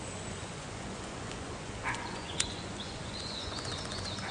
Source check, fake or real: fake